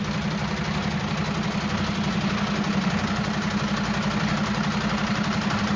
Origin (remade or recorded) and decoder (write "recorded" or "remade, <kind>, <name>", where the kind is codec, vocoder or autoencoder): recorded